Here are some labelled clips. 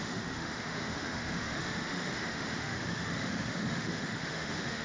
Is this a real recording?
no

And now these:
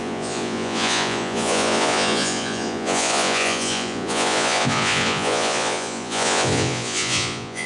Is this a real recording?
no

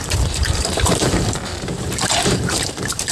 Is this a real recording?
no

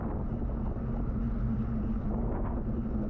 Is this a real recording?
yes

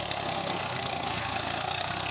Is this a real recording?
no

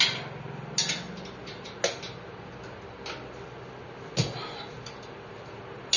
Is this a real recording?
yes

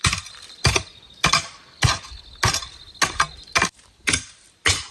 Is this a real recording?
yes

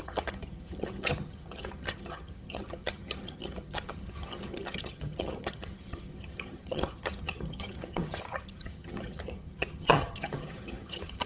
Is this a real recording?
no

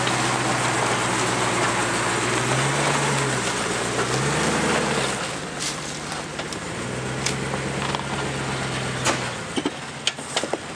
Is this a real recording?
yes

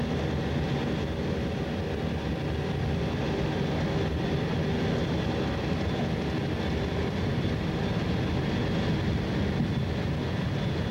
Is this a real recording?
yes